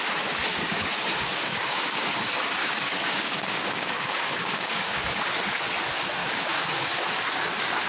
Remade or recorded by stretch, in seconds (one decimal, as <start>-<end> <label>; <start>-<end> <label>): 0.0-0.5 recorded; 0.5-2.2 remade; 2.2-2.6 recorded; 2.6-5.3 remade; 5.3-6.2 recorded; 6.2-7.4 remade; 7.4-7.9 recorded